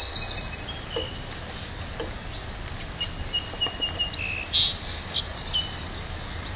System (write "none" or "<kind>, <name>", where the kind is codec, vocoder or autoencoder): none